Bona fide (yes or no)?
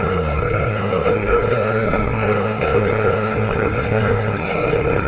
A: no